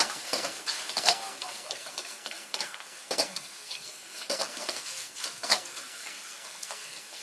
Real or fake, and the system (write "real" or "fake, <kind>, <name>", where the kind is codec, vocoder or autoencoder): fake, codec, SNAC